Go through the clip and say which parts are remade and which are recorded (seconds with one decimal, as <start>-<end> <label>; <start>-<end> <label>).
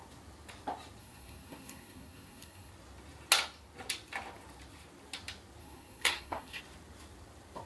0.0-1.0 recorded; 1.0-2.7 remade; 2.7-5.6 recorded; 5.6-6.6 remade; 6.6-7.7 recorded